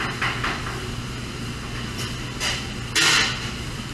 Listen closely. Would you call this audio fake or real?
real